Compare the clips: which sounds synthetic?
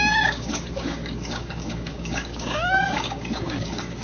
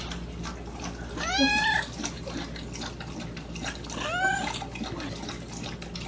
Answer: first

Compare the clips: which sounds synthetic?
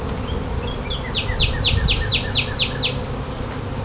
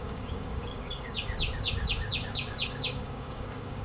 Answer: second